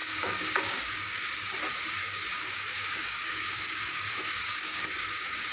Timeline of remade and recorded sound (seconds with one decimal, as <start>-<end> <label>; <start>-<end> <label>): 0.0-1.3 remade; 1.3-2.0 recorded; 2.0-5.5 remade